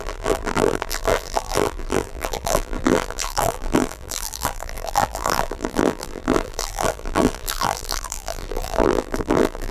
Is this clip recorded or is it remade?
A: remade